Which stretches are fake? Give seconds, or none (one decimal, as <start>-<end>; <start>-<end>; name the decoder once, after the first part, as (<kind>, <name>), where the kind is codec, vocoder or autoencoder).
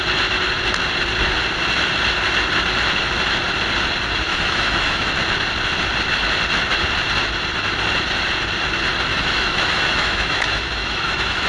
4.3-5.1 (autoencoder, DAC-VAE); 9.1-11.5